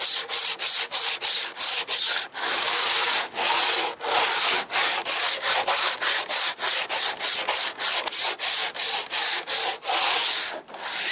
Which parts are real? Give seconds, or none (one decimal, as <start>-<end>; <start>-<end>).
0.0-11.1